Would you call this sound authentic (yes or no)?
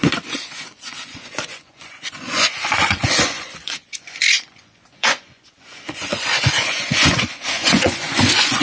no